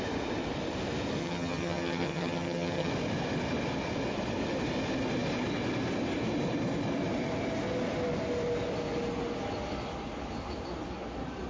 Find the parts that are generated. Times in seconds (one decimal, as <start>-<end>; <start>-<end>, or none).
1.2-2.9